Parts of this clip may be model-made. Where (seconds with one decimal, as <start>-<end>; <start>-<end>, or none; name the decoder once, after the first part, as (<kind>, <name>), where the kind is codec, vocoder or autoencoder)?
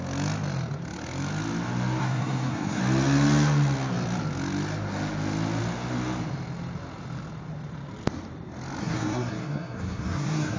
2.0-2.8 (codec, SNAC); 8.8-10.6